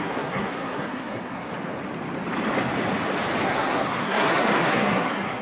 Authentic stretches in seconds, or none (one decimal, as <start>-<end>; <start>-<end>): 1.5-3.4